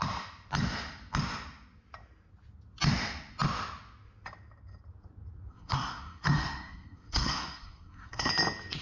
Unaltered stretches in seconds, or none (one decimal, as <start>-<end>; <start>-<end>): 0.0-5.5; 8.3-8.8